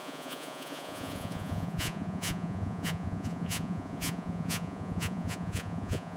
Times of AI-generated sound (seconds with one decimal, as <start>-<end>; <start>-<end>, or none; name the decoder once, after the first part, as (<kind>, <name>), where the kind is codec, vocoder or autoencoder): 0.0-6.2 (vocoder, Vocos)